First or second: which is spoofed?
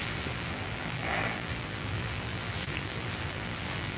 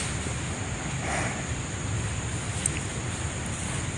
first